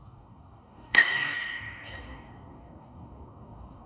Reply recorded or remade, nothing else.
remade